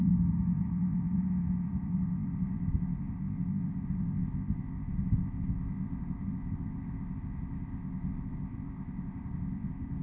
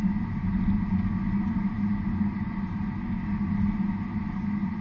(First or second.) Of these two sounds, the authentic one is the second